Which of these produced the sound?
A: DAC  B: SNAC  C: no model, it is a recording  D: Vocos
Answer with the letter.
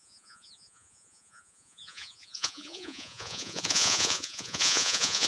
D